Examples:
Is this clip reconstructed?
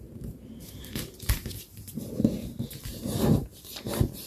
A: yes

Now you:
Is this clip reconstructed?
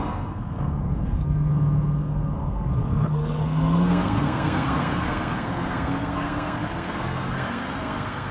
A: yes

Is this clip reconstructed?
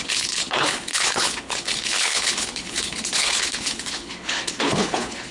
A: yes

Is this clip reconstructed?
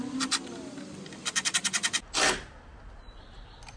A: no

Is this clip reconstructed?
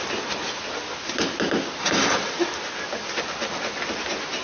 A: no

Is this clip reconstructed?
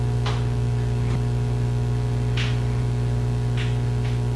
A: no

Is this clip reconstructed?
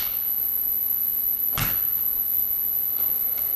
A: yes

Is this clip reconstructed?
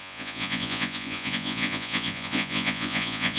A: yes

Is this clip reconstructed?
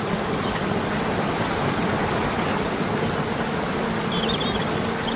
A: no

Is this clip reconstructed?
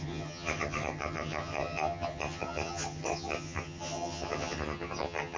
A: yes